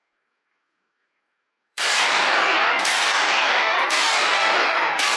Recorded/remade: remade